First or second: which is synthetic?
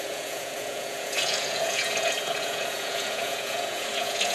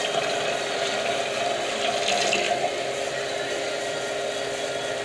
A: first